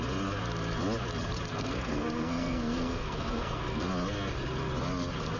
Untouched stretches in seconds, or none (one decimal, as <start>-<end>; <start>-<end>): 0.0-1.5; 3.9-5.4